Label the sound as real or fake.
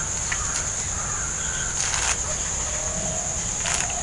real